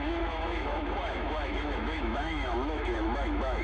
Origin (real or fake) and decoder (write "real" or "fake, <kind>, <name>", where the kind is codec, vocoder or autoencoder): fake, autoencoder, DAC-VAE